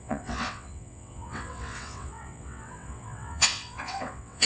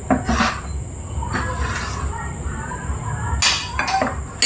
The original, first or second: second